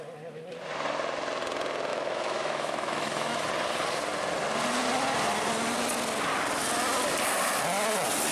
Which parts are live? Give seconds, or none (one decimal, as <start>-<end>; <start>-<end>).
0.0-1.9; 3.5-8.3